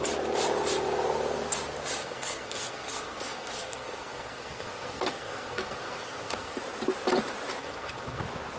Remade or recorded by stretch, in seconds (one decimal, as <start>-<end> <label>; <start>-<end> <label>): 0.0-2.0 recorded; 2.0-6.6 remade; 6.6-7.6 recorded; 7.6-8.2 remade; 8.2-8.6 recorded